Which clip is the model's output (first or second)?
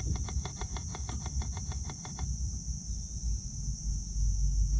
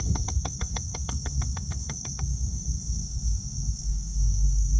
second